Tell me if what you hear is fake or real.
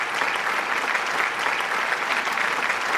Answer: real